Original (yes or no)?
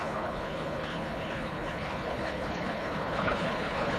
no